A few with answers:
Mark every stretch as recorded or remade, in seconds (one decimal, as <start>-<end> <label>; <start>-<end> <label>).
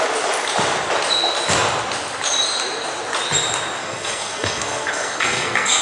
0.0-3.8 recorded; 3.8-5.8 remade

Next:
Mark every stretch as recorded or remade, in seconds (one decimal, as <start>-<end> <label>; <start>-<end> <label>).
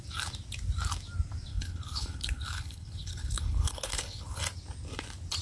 0.0-1.5 recorded; 1.5-4.4 remade; 4.4-5.4 recorded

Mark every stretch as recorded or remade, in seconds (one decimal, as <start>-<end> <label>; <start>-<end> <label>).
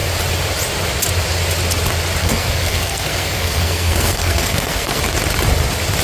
0.0-2.2 recorded; 2.2-5.0 remade; 5.0-6.0 recorded